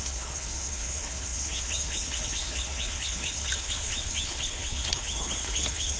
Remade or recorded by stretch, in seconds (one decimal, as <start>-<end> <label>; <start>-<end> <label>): 0.0-6.0 remade